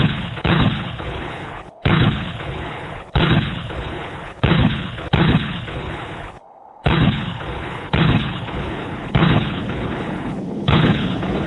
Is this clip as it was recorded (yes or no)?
no